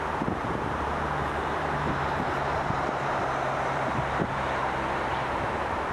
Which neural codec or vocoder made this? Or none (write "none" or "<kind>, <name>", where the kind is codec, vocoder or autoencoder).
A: vocoder, BigVGAN v2